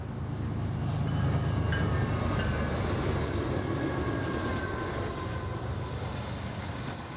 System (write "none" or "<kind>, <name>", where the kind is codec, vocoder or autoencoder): none